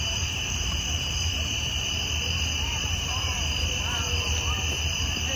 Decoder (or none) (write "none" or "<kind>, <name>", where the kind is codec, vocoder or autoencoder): vocoder, BigVGAN v2